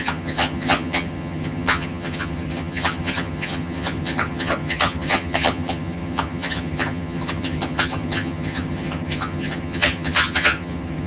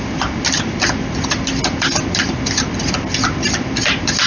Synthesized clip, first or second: first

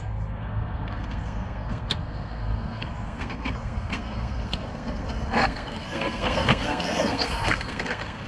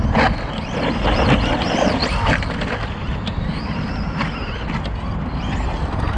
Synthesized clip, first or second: first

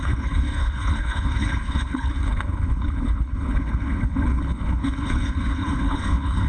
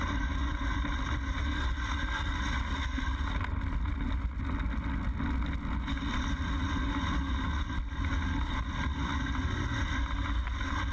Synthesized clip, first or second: first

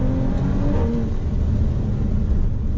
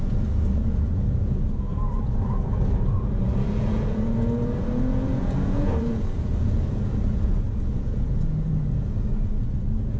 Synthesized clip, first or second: second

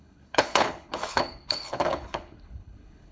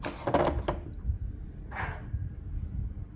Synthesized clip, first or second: first